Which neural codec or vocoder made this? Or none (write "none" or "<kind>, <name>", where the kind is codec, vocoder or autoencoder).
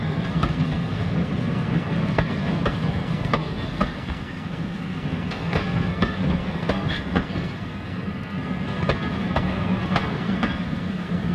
codec, SNAC